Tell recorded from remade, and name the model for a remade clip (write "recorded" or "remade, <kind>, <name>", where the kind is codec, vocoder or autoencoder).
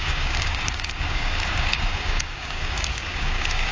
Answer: remade, codec, DAC